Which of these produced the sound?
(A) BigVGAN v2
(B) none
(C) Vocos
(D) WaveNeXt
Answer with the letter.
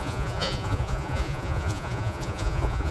C